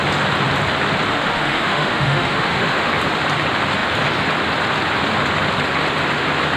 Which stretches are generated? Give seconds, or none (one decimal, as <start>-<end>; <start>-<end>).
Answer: 1.1-2.9